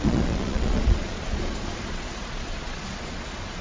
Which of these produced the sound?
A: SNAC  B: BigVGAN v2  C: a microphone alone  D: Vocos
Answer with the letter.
D